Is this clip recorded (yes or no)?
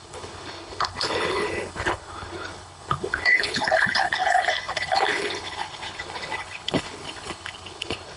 no